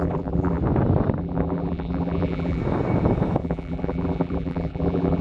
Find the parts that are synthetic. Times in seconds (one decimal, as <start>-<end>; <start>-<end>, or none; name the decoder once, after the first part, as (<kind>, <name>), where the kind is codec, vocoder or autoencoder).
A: 0.0-0.6 (vocoder, BigVGAN v2); 1.2-2.6; 3.4-5.2